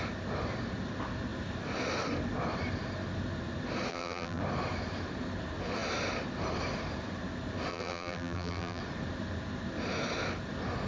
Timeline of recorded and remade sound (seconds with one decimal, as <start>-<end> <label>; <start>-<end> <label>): 0.0-3.9 recorded; 3.9-4.4 remade; 4.4-7.7 recorded; 7.7-8.8 remade; 8.8-10.9 recorded